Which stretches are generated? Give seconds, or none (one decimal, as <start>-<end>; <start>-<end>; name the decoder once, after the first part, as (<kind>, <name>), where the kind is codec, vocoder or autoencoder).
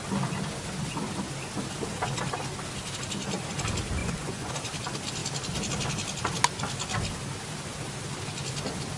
4.0-4.5 (vocoder, Vocos)